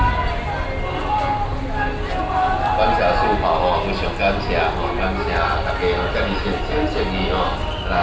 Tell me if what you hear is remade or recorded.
recorded